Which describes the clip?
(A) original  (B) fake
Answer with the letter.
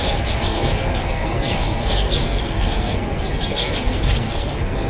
B